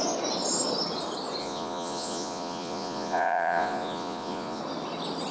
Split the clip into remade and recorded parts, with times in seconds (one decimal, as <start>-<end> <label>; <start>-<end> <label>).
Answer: 0.0-1.4 recorded; 1.4-4.6 remade; 4.6-5.3 recorded